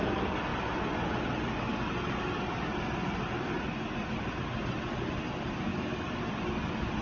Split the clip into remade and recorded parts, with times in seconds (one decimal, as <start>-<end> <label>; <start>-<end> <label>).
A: 0.0-5.7 recorded; 5.7-6.2 remade; 6.2-7.0 recorded